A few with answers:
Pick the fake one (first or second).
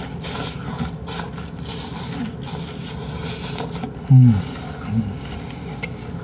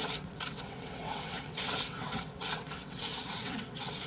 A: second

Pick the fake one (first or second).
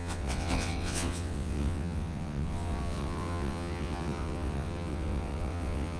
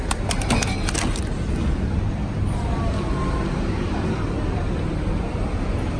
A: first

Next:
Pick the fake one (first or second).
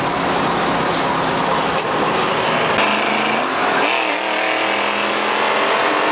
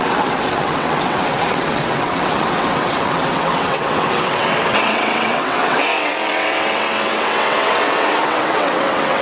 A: second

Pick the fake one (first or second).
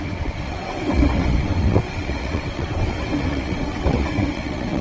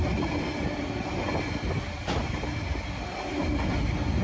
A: first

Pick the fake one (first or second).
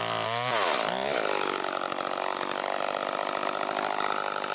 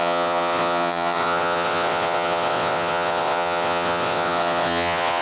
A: second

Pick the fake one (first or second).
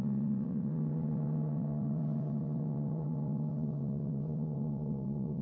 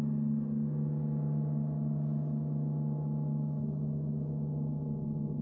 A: first